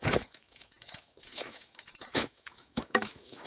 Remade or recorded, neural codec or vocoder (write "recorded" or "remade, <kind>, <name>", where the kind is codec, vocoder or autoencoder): remade, autoencoder, DAC-VAE